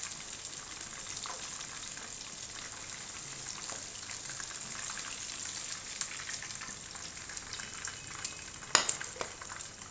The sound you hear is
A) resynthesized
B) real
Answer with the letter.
B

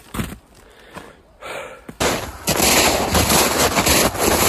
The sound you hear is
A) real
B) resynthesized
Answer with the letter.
A